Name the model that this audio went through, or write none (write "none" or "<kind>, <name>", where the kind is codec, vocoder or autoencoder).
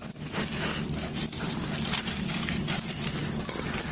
none